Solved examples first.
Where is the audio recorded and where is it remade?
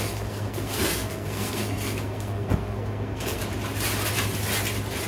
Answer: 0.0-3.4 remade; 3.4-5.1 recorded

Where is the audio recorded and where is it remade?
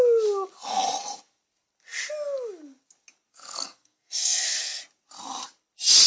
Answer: 0.0-3.3 recorded; 3.3-4.8 remade; 4.8-6.1 recorded